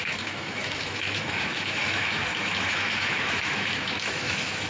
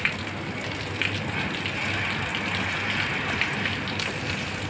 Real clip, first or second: second